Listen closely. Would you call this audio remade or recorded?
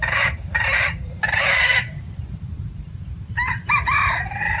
remade